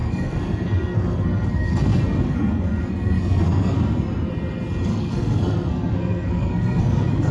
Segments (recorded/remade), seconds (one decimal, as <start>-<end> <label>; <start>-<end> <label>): 0.0-4.3 remade; 4.3-4.9 recorded; 4.9-7.3 remade